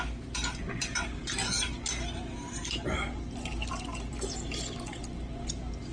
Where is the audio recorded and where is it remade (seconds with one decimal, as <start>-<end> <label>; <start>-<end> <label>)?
0.0-5.9 recorded